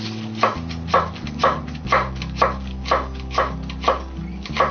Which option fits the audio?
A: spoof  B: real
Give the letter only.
B